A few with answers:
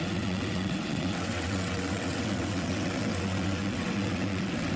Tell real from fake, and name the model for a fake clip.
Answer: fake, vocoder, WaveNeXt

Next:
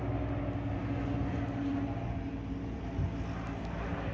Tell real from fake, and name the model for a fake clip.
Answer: real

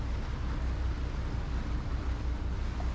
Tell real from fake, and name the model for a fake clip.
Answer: real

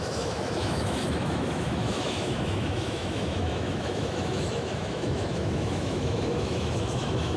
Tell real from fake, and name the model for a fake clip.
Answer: fake, autoencoder, DAC-VAE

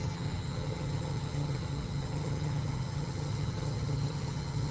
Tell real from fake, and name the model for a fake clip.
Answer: fake, vocoder, HiFi-GAN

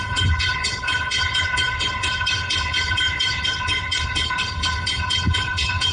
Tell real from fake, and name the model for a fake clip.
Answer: fake, codec, HILCodec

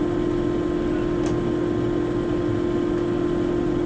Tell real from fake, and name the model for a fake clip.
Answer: real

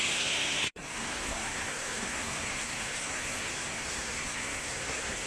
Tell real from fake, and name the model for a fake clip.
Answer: fake, codec, SNAC